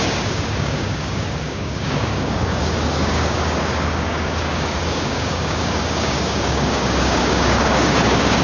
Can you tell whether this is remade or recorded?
remade